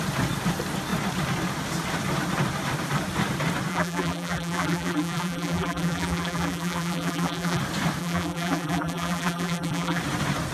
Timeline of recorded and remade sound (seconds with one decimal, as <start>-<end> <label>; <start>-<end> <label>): 0.0-3.7 recorded; 3.7-7.6 remade; 7.6-8.0 recorded; 8.0-10.0 remade; 10.0-10.5 recorded